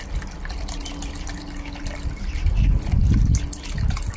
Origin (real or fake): real